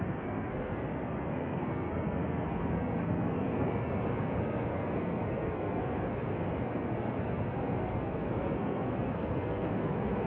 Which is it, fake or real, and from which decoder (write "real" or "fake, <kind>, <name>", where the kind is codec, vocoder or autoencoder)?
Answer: fake, codec, SNAC